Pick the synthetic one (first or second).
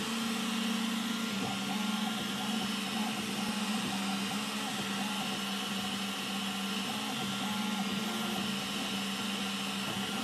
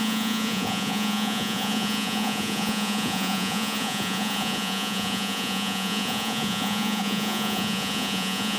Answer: second